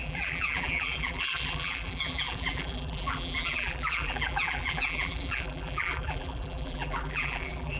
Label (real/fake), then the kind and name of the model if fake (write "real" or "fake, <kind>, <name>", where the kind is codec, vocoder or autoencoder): fake, vocoder, BigVGAN v2